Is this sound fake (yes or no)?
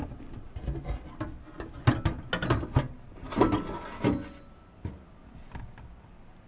no